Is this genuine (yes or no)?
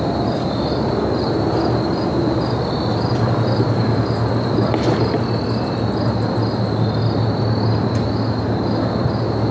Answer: yes